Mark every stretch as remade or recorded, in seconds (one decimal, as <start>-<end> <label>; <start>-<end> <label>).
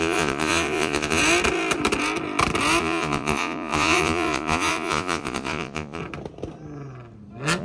0.0-1.2 remade; 1.2-2.8 recorded; 2.8-6.0 remade; 6.0-7.6 recorded